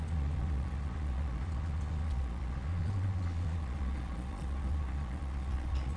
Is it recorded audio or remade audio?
remade